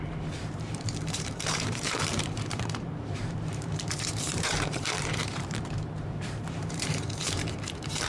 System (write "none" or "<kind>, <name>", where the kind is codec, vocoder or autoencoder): vocoder, BigVGAN v2